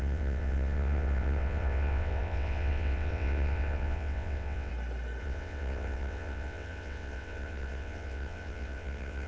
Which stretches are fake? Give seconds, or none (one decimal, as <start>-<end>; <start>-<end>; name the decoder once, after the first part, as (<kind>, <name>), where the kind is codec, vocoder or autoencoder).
0.0-4.7 (vocoder, WaveNeXt); 5.2-9.3